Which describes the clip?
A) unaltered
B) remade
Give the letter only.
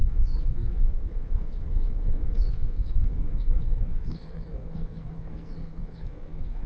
B